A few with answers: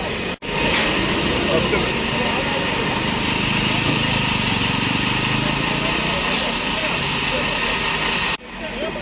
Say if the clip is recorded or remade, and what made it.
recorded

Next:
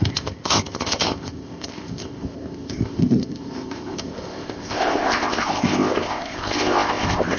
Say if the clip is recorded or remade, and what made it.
remade, codec, ZipCodec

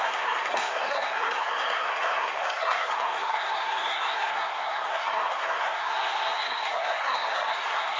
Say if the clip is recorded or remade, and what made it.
remade, codec, SNAC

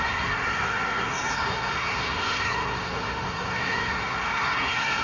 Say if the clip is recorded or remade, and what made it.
remade, codec, SNAC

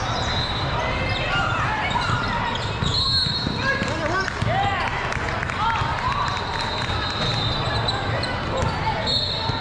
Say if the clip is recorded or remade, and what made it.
recorded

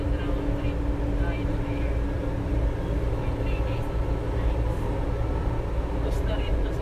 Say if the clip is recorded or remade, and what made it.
recorded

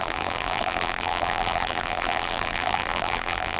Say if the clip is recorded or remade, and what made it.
remade, vocoder, BigVGAN v2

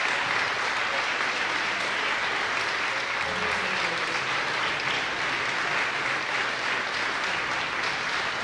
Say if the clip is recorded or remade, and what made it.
recorded